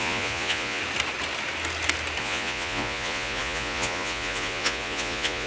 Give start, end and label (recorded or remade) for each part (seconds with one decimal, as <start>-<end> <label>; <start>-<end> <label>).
0.0-0.8 remade; 0.8-2.2 recorded; 2.2-5.5 remade